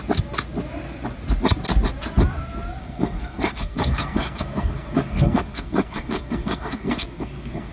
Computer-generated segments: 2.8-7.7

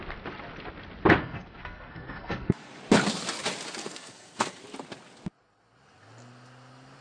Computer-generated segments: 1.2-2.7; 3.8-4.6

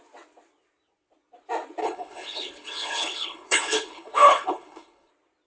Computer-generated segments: 1.8-5.1

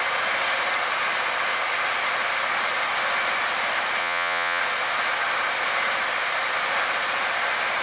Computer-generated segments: 4.0-4.6

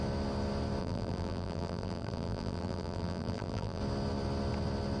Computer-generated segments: 0.8-3.8

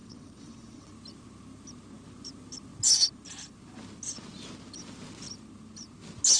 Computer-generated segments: 0.0-0.9

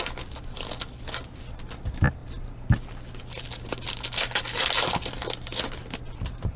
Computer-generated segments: none